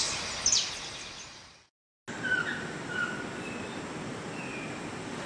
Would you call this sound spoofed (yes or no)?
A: no